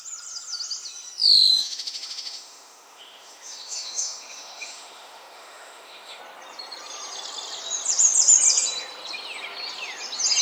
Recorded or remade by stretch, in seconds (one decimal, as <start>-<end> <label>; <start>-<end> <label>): 0.0-1.5 recorded; 1.5-6.2 remade; 6.2-10.4 recorded